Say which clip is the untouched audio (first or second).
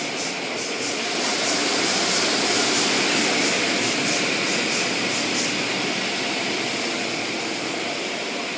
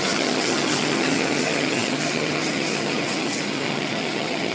first